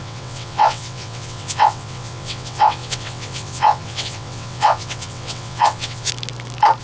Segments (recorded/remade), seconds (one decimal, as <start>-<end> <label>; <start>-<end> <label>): 0.0-6.1 remade; 6.1-6.8 recorded